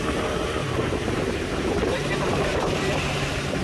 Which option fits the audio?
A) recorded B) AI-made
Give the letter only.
B